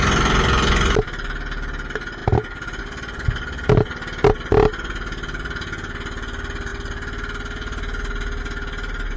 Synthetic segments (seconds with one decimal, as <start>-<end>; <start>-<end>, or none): none